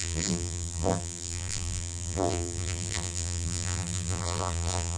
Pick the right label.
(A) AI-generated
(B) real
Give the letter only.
A